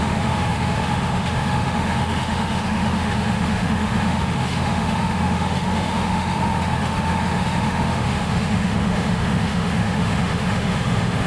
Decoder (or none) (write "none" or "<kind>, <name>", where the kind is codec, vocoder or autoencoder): autoencoder, DAC-VAE